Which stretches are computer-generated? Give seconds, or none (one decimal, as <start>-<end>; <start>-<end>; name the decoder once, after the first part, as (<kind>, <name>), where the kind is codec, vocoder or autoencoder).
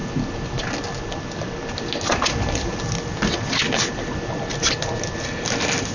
none